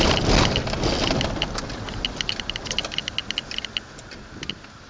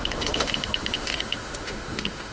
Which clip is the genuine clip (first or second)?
first